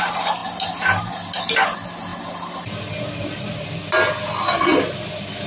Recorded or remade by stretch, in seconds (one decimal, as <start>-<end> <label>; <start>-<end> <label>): 0.0-5.5 recorded